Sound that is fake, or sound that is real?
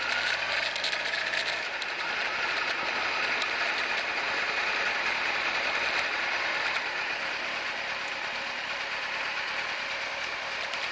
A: real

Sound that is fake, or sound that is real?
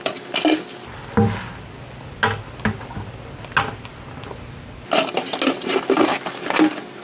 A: real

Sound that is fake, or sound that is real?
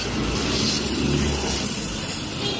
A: real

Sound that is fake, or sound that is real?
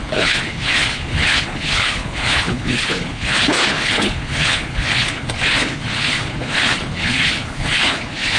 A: fake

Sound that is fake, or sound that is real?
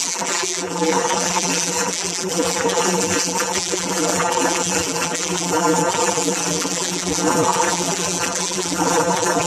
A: fake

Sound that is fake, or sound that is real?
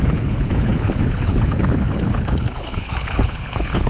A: fake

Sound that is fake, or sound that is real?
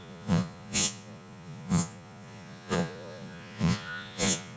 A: fake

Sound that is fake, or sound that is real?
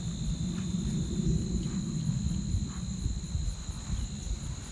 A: real